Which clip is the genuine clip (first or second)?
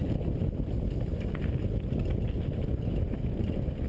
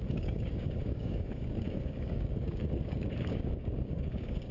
first